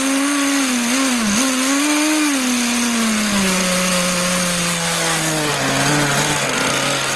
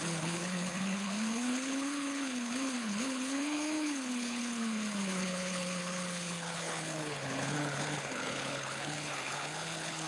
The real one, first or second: first